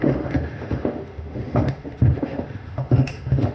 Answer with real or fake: fake